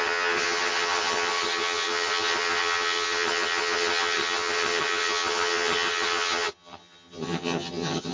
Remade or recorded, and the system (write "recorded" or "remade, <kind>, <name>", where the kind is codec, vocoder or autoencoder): remade, vocoder, HiFi-GAN